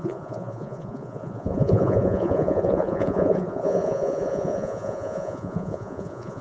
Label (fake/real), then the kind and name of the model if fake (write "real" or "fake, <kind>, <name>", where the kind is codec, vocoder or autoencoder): fake, vocoder, Vocos